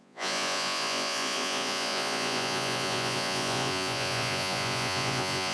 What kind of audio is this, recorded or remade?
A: remade